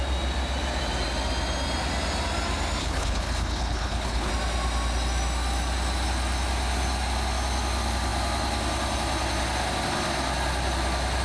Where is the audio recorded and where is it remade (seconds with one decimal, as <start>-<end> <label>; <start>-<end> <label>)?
0.0-2.8 recorded; 2.8-4.3 remade; 4.3-11.2 recorded